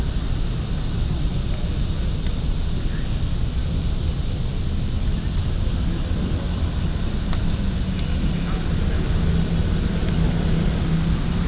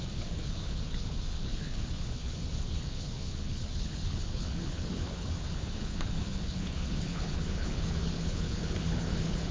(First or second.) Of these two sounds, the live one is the first